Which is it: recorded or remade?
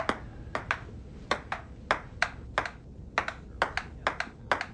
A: recorded